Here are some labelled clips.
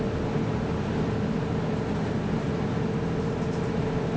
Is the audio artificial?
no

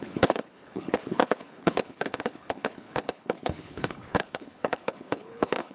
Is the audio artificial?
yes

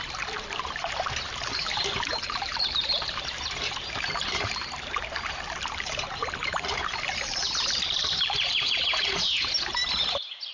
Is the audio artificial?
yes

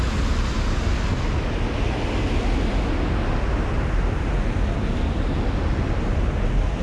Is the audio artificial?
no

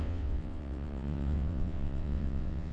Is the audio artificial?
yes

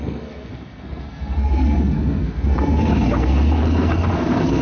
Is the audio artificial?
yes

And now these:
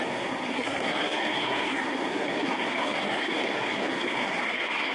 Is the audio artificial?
yes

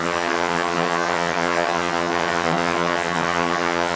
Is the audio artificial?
yes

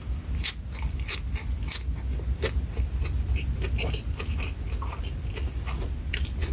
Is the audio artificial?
no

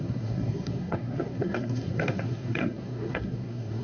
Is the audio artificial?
yes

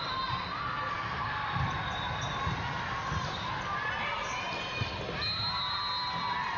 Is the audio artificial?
no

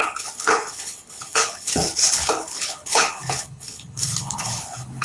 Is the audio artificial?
yes